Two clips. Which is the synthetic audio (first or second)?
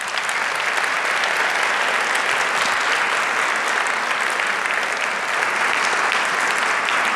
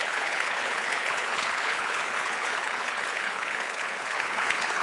second